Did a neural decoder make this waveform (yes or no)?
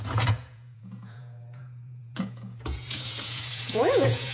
yes